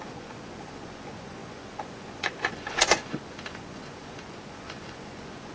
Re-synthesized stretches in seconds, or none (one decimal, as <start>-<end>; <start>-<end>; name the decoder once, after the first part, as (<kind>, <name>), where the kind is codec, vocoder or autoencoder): 0.0-5.5 (vocoder, Vocos)